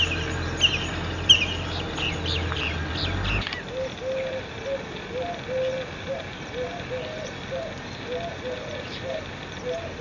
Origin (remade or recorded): recorded